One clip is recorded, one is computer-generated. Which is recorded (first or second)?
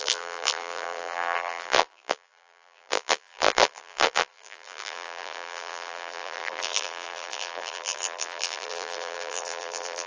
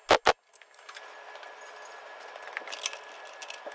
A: second